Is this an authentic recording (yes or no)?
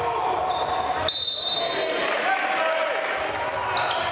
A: yes